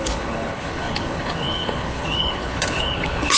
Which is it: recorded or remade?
remade